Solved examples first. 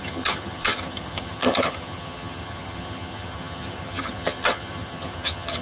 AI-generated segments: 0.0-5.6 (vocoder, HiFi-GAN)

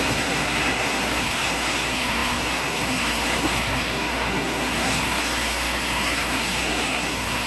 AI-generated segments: 0.0-7.5 (codec, SNAC)

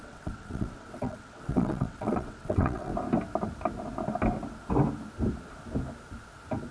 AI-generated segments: 0.0-2.9 (vocoder, WaveNeXt)

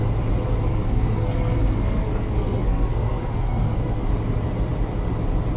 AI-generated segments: 0.7-4.1 (codec, SNAC)